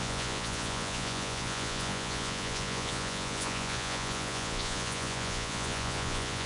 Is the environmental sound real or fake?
fake